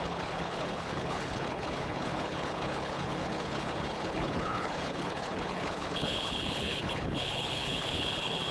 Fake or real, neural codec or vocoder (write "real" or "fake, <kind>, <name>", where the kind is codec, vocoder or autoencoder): fake, codec, HILCodec